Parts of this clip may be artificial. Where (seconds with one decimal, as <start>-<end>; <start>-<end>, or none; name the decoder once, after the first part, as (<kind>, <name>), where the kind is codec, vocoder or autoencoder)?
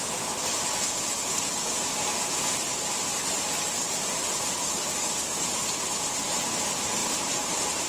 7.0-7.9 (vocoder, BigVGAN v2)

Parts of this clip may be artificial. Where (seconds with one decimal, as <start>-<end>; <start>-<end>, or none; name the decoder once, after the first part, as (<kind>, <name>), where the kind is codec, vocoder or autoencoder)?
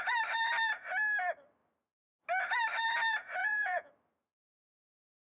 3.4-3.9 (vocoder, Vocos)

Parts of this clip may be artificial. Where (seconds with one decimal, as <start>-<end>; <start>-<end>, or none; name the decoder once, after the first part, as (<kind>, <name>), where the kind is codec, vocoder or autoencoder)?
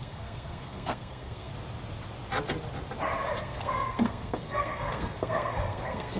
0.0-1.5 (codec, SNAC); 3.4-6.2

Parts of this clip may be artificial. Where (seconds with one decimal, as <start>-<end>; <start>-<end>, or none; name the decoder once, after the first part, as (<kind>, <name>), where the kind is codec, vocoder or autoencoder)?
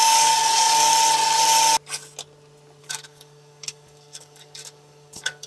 0.0-0.9 (codec, DAC); 2.8-5.5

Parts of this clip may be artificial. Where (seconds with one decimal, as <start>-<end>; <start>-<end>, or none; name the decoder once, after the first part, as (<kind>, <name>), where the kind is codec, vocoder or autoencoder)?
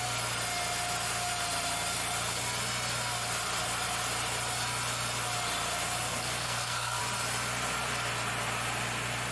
6.1-7.0 (codec, SNAC)